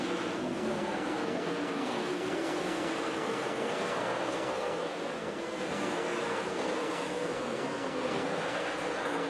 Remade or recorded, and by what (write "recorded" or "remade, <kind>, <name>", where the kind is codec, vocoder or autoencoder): remade, codec, SNAC